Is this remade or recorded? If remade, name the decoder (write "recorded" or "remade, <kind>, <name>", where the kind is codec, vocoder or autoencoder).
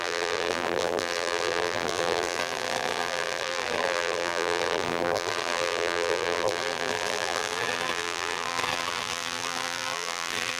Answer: remade, vocoder, BigVGAN v2